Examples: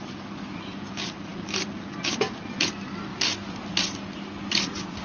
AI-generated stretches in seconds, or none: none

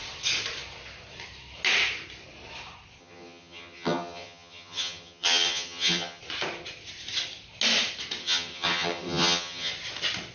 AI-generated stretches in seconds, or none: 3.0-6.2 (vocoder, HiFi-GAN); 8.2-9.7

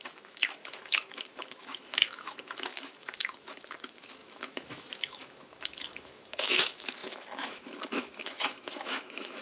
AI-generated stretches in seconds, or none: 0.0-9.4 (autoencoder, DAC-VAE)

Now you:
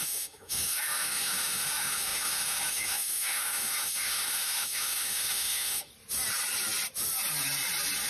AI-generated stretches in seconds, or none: 0.0-5.9 (autoencoder, DAC-VAE)

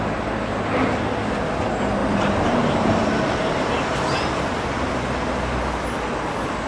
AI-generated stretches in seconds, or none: 2.0-3.7 (vocoder, BigVGAN v2)